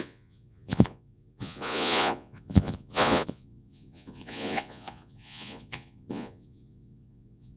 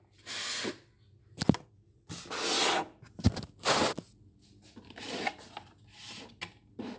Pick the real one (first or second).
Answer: second